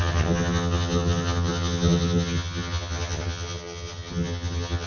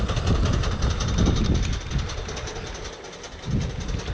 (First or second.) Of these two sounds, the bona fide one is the second